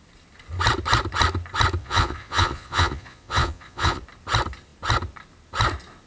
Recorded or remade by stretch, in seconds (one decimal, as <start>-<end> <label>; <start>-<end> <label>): 0.0-1.8 recorded; 1.8-4.0 remade; 4.0-6.1 recorded